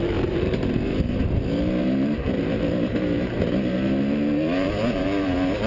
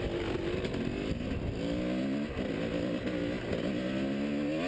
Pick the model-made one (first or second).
first